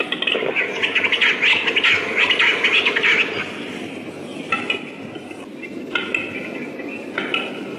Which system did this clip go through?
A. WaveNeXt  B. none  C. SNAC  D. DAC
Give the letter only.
B